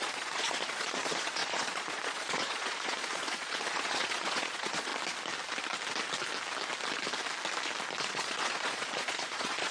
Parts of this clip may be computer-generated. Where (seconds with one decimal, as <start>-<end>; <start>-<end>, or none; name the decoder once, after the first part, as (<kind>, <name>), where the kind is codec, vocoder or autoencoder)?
0.0-4.9 (vocoder, Vocos); 8.0-9.7